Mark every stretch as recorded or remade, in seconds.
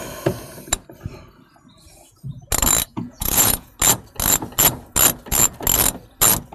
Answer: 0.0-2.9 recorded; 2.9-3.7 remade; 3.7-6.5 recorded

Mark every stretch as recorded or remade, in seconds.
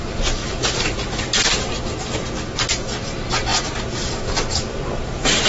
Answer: 0.0-5.5 remade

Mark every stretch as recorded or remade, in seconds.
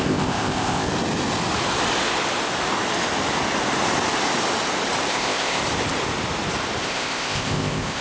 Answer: 0.0-0.9 remade; 0.9-5.1 recorded; 5.1-5.6 remade; 5.6-6.8 recorded; 6.8-8.0 remade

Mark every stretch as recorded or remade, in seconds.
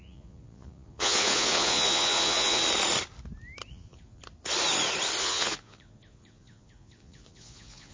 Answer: 0.0-2.6 remade; 2.6-3.7 recorded; 3.7-4.2 remade; 4.2-5.2 recorded; 5.2-7.9 remade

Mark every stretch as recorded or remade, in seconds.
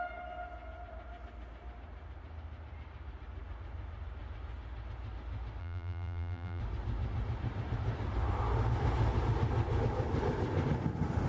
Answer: 0.0-5.6 recorded; 5.6-6.6 remade; 6.6-11.3 recorded